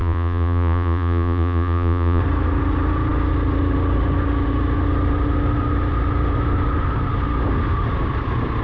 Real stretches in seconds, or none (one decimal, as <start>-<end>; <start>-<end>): 2.2-8.6

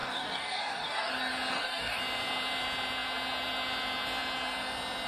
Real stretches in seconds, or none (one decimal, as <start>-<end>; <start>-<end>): 1.1-1.5; 2.0-5.1

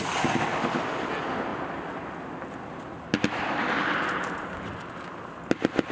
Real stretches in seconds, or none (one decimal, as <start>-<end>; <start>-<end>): 0.0-5.9

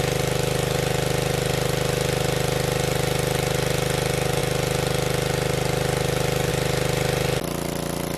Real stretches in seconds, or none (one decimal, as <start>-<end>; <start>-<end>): 0.0-8.2

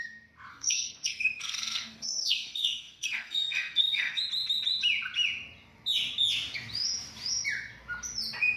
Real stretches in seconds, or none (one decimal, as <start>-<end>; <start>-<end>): 0.0-0.5; 4.2-8.6